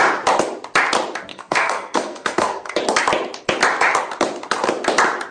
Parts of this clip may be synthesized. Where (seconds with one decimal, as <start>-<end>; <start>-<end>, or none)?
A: 1.3-2.8